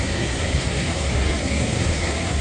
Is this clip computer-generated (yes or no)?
yes